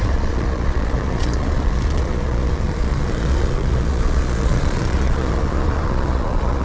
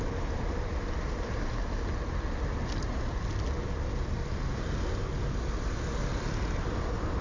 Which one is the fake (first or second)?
first